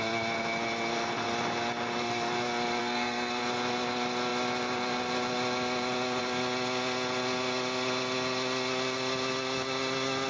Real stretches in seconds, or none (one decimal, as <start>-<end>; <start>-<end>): 0.0-2.8; 3.4-10.3